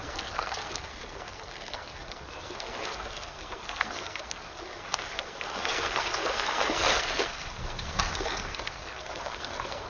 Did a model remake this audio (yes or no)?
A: yes